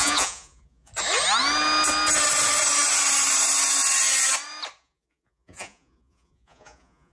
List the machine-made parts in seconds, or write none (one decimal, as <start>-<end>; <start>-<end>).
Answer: 0.0-0.9; 4.8-7.1